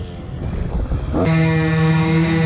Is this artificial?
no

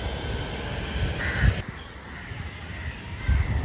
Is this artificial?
no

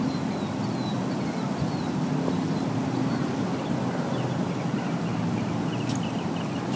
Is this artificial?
no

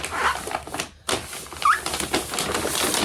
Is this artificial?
no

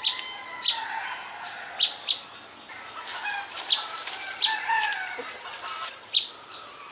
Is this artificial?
no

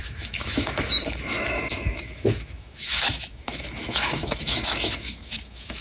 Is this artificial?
yes